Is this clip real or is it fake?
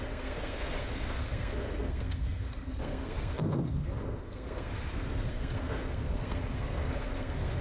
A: fake